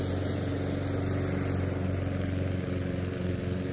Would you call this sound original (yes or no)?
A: yes